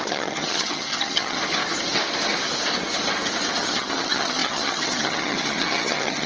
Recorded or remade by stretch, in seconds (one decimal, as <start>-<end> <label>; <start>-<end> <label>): 0.0-1.4 remade; 1.4-3.6 recorded; 3.6-6.3 remade